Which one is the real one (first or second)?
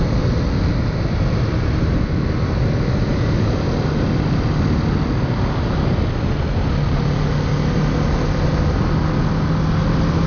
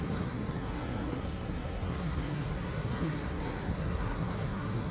first